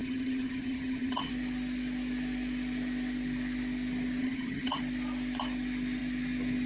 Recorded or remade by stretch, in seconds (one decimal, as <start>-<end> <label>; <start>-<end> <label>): 0.0-1.3 remade; 1.3-4.2 recorded; 4.2-4.8 remade; 4.8-6.7 recorded